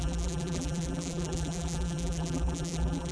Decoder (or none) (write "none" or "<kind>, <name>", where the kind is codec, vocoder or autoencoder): vocoder, BigVGAN v2